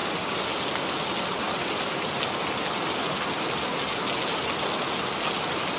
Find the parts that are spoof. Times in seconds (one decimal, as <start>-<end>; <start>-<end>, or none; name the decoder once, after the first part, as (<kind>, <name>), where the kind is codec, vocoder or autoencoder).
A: none